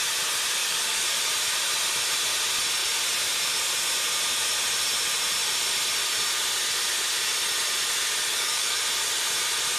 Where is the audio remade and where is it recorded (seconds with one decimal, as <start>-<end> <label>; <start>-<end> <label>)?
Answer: 0.0-0.6 recorded; 0.6-1.2 remade; 1.2-8.3 recorded; 8.3-8.8 remade; 8.8-9.8 recorded